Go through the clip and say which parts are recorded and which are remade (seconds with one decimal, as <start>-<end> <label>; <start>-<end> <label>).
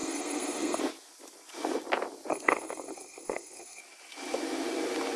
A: 0.0-0.8 remade; 0.8-2.3 recorded; 2.3-3.8 remade; 3.8-5.2 recorded